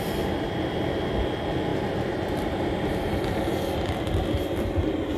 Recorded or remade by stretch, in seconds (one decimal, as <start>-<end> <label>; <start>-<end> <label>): 0.0-5.2 recorded